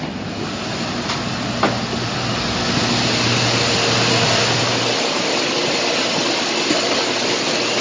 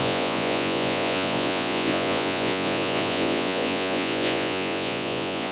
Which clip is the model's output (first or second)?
second